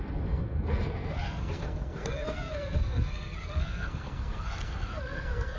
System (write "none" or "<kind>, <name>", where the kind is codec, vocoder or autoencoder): codec, SNAC